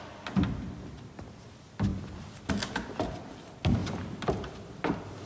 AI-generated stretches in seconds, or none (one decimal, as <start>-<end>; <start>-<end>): none